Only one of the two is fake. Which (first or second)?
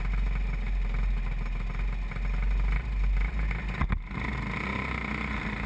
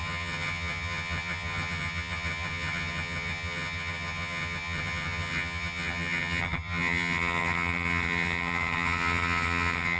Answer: second